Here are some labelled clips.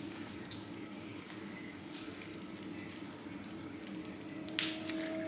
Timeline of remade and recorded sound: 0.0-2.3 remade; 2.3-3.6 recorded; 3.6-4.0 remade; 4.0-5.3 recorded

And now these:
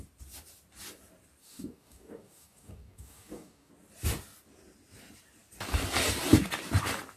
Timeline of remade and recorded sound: 0.0-1.4 recorded; 1.4-3.7 remade; 3.7-7.2 recorded